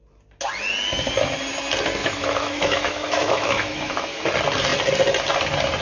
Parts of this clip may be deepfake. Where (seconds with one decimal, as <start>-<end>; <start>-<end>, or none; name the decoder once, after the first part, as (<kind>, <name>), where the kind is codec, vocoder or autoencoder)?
2.0-4.3 (autoencoder, DAC-VAE)